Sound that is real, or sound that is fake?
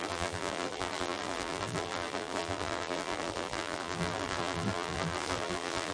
fake